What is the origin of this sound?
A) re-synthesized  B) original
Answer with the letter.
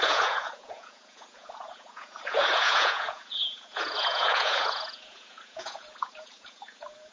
A